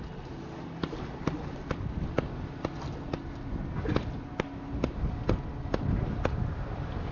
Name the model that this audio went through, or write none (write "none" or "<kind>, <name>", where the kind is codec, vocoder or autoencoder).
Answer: none